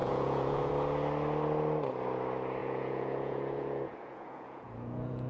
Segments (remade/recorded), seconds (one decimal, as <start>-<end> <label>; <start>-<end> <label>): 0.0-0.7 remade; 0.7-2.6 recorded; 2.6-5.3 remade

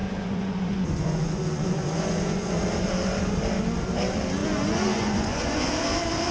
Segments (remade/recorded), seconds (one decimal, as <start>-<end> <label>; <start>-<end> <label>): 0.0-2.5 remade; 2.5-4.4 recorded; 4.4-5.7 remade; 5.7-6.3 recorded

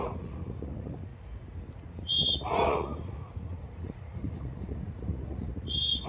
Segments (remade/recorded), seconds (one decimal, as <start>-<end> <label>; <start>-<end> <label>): 0.0-1.1 remade; 1.1-1.7 recorded; 1.7-6.1 remade

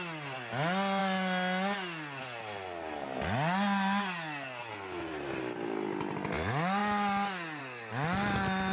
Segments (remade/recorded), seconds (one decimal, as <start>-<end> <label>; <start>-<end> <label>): 0.0-8.7 recorded

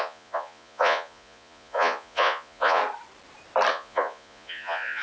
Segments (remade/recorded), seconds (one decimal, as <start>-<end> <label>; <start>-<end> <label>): 0.0-2.8 remade; 2.8-3.7 recorded; 3.7-5.0 remade